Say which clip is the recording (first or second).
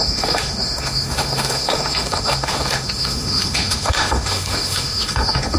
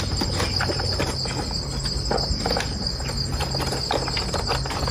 second